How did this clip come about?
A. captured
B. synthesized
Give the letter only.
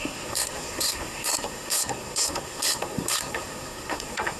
B